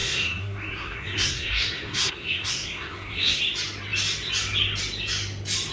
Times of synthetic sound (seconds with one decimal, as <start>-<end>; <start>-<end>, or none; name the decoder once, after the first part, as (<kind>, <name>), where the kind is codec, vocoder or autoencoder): 0.0-3.4 (codec, SNAC)